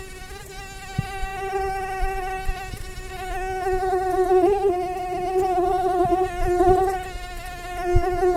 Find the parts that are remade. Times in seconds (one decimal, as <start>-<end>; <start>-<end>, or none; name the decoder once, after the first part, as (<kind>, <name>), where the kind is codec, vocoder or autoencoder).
none